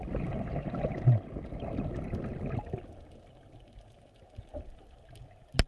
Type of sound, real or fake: real